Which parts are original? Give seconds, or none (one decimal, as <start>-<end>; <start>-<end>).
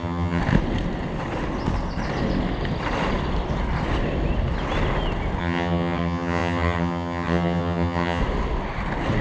0.4-5.4; 8.2-9.2